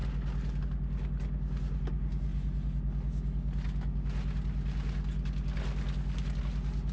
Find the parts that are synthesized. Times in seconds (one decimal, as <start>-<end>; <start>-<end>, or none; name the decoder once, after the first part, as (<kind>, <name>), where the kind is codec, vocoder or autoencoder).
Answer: none